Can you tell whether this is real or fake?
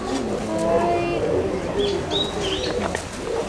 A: real